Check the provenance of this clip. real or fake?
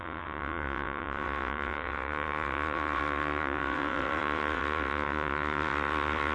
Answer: fake